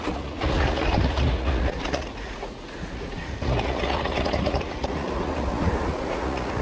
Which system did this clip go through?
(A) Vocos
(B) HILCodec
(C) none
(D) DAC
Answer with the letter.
A